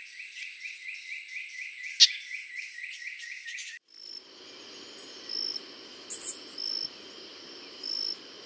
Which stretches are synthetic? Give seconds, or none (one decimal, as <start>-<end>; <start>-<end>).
none